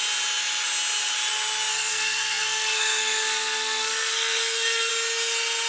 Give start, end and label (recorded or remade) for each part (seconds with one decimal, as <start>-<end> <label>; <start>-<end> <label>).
0.0-1.7 recorded; 1.7-4.9 remade; 4.9-5.7 recorded